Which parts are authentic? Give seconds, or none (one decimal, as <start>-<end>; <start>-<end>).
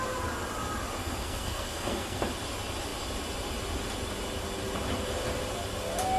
0.0-1.0; 2.3-6.2